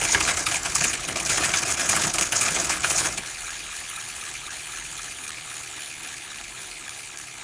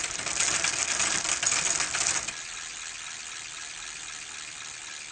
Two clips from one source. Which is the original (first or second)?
second